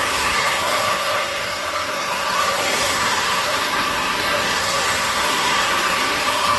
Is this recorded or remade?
remade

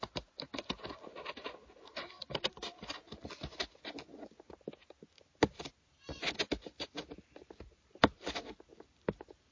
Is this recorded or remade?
recorded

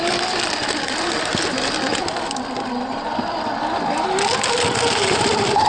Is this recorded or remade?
recorded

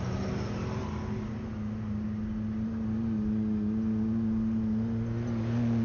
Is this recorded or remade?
recorded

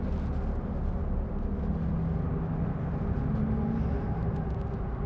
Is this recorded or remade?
recorded